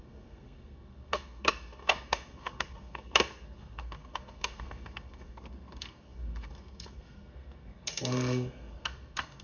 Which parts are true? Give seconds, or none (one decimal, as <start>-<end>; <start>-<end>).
none